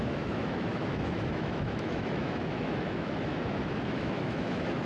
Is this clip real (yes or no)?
no